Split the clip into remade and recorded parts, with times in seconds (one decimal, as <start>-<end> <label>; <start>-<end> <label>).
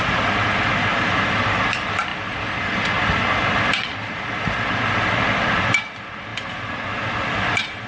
0.0-0.9 recorded; 0.9-1.6 remade; 1.6-6.3 recorded; 6.3-7.9 remade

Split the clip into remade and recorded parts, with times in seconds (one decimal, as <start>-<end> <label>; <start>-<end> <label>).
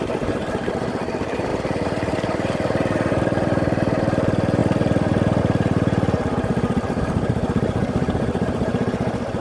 0.0-4.6 remade; 4.6-5.4 recorded; 5.4-9.4 remade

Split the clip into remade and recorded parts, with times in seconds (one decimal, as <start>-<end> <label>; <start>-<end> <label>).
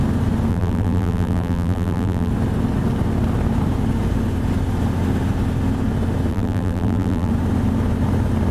0.0-0.5 recorded; 0.5-2.3 remade; 2.3-6.3 recorded; 6.3-7.3 remade; 7.3-8.5 recorded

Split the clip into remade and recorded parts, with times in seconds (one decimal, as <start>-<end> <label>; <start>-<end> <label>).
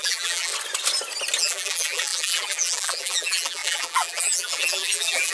0.0-0.5 remade; 0.5-1.4 recorded; 1.4-5.3 remade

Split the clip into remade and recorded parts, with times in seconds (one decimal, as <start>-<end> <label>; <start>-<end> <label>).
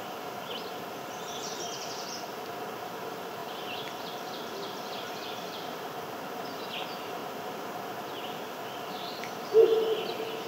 0.0-7.2 remade; 7.2-10.5 recorded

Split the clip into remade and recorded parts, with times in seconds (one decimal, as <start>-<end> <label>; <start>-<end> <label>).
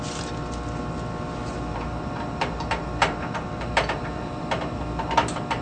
0.0-1.4 recorded; 1.4-4.8 remade; 4.8-5.6 recorded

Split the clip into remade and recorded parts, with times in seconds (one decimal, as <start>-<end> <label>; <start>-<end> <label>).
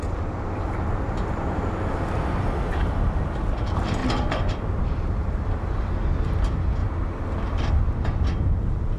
0.0-9.0 remade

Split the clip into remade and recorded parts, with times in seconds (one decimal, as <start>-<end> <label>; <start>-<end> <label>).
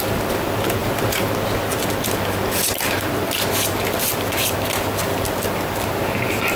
0.0-0.8 recorded; 0.8-1.3 remade; 1.3-6.6 recorded